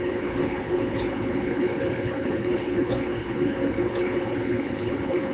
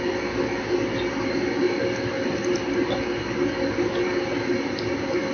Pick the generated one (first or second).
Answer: first